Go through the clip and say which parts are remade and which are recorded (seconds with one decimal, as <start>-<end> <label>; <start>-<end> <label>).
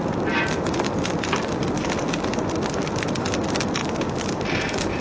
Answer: 0.0-5.0 recorded